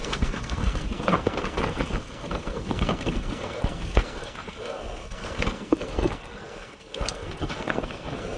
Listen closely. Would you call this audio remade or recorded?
remade